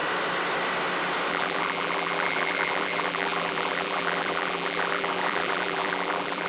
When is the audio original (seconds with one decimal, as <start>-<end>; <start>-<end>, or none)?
0.0-1.3